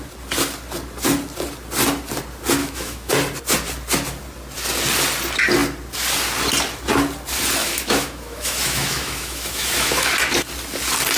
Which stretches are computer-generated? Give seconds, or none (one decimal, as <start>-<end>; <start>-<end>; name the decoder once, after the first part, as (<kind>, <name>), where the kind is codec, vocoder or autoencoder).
2.6-3.1 (autoencoder, DAC-VAE); 7.6-10.1

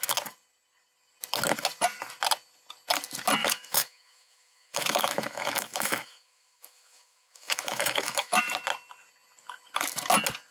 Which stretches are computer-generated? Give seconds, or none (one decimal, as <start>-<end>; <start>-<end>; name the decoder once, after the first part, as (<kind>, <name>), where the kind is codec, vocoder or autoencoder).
3.4-8.4 (autoencoder, DAC-VAE)

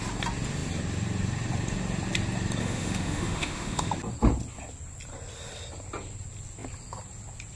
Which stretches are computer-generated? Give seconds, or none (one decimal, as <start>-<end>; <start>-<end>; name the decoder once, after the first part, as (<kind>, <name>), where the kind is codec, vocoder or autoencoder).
2.6-3.9 (autoencoder, DAC-VAE)

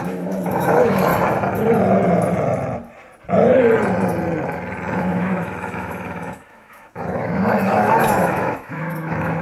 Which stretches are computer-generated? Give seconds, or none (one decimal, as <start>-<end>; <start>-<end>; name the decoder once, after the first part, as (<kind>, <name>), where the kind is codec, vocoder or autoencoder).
0.0-1.1 (autoencoder, DAC-VAE); 5.0-9.4

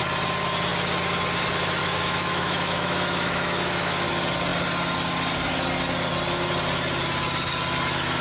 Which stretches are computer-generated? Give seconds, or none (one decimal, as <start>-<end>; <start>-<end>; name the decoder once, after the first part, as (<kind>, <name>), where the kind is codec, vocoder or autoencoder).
1.8-4.1 (autoencoder, DAC-VAE)

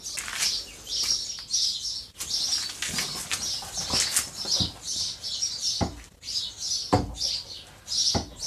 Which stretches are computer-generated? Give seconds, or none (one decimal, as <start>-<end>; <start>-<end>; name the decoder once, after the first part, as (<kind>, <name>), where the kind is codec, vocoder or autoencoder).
none

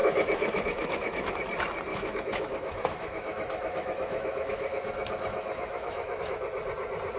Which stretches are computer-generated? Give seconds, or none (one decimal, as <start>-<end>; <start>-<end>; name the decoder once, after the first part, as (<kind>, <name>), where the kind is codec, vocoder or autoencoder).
0.0-1.3 (autoencoder, DAC-VAE); 1.9-6.2